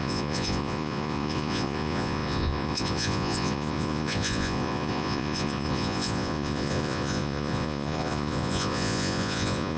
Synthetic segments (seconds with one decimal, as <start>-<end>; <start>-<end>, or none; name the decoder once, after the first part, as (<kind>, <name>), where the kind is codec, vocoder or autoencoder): 0.0-9.8 (vocoder, Vocos)